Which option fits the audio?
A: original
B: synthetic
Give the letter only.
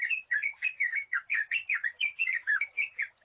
B